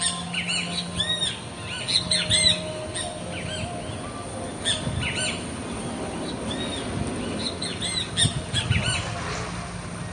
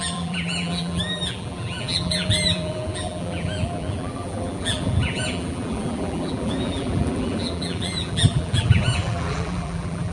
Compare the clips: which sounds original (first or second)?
first